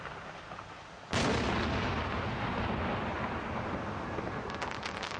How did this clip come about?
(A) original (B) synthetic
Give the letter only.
A